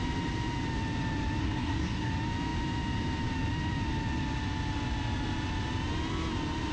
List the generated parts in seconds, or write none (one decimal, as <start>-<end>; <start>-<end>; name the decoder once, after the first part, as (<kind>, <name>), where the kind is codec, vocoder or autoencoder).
1.4-2.1 (codec, SNAC)